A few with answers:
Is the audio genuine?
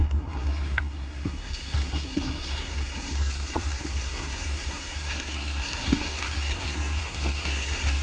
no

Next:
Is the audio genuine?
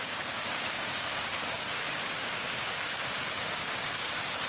no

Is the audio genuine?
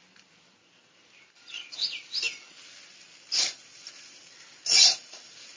yes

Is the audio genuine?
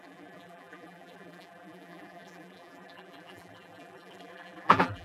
no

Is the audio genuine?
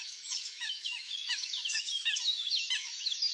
no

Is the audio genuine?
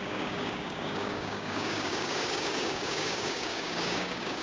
no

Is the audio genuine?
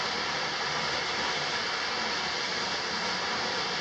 yes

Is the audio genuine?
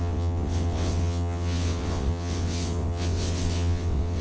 no